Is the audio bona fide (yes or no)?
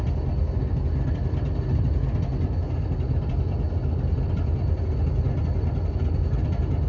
yes